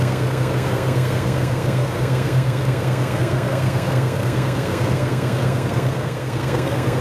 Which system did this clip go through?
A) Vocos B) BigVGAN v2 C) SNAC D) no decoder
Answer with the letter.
C